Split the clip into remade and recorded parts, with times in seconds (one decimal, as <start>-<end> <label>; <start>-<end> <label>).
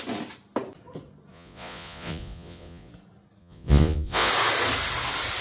0.0-1.3 recorded; 1.3-2.9 remade; 2.9-3.4 recorded; 3.4-4.3 remade; 4.3-5.4 recorded